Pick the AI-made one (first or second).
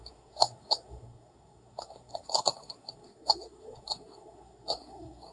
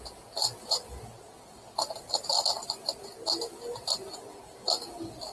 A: first